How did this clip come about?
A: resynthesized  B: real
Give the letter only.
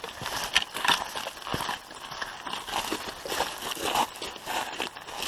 B